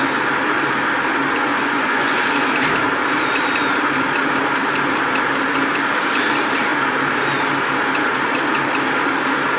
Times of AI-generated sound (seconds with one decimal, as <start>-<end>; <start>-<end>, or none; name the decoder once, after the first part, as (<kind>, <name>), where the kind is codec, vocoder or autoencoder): 1.5-2.2 (vocoder, Vocos)